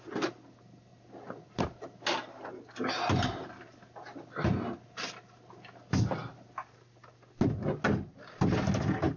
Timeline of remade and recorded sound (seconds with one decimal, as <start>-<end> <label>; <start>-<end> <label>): 0.0-9.2 recorded